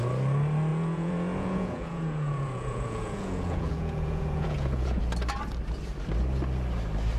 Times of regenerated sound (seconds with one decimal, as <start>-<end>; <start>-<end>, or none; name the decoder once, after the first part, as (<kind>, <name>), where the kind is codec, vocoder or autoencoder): 0.7-5.0 (vocoder, Vocos)